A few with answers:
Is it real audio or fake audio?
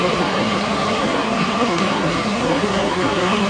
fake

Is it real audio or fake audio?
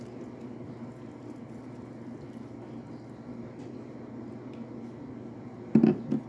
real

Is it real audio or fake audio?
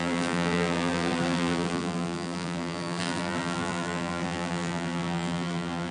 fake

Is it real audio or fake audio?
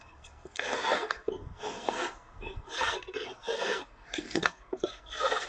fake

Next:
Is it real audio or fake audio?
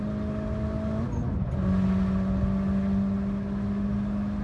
real